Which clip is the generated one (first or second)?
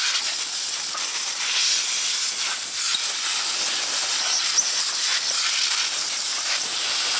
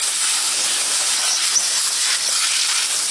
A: second